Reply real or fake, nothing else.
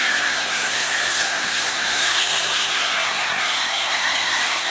fake